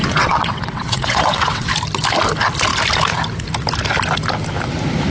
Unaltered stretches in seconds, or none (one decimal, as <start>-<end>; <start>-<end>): 1.7-5.1